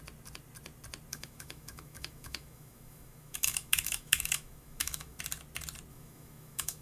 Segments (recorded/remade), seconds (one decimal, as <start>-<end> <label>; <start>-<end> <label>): 0.0-1.1 recorded; 1.1-5.2 remade; 5.2-5.9 recorded; 5.9-6.8 remade